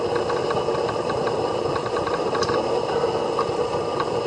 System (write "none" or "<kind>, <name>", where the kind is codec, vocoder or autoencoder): none